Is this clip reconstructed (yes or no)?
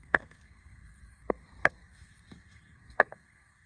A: yes